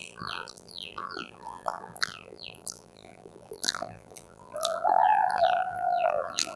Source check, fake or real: fake